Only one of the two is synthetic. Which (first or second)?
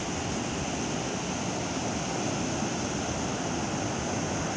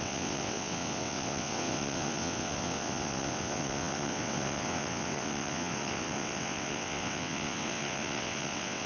second